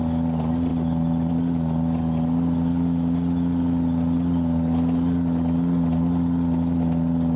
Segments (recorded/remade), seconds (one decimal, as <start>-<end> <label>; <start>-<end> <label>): 0.0-7.4 recorded